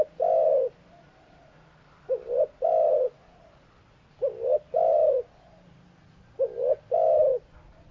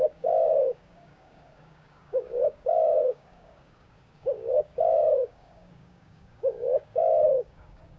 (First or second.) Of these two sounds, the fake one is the second